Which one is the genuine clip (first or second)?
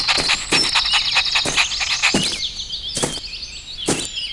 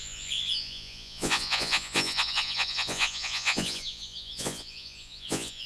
first